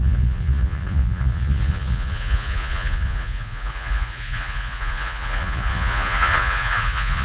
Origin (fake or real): fake